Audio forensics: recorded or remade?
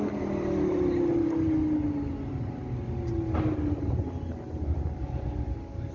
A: recorded